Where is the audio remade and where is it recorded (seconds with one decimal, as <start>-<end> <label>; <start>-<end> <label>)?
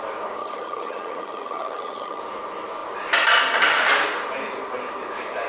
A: 0.0-0.4 recorded; 0.4-2.2 remade; 2.2-5.5 recorded